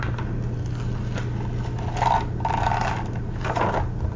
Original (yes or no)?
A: yes